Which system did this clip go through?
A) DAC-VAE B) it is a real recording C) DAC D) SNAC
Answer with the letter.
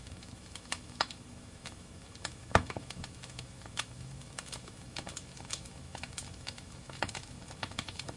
A